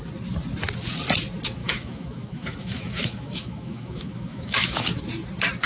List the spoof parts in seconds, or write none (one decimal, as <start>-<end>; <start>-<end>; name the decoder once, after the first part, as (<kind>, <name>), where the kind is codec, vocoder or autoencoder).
1.6-4.9 (autoencoder, DAC-VAE)